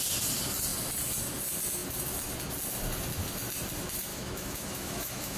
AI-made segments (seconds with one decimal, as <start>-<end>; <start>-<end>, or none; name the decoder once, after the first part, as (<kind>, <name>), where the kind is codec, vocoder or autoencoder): 4.1-5.4 (autoencoder, DAC-VAE)